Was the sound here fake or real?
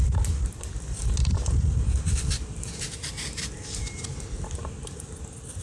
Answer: real